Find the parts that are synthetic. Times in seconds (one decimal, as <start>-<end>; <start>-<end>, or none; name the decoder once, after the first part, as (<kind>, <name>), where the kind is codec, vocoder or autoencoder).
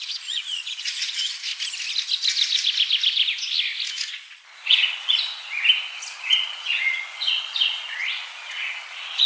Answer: 0.0-1.5 (vocoder, Vocos); 4.1-5.3; 6.2-9.3